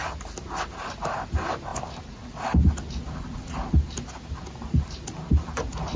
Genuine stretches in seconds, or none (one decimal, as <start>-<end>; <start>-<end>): 0.0-6.0